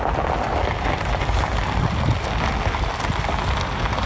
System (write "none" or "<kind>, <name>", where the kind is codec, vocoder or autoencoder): none